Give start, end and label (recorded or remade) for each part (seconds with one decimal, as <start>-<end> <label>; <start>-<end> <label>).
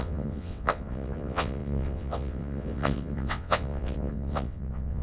0.0-5.0 remade